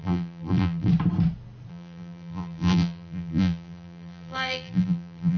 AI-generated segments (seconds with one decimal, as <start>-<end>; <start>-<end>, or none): 0.0-0.9; 1.7-5.4